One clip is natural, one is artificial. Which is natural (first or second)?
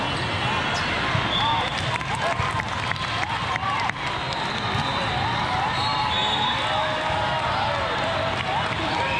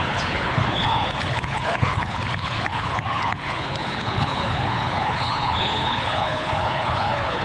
first